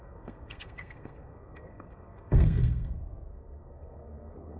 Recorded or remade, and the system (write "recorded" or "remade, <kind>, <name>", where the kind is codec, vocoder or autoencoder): remade, codec, SNAC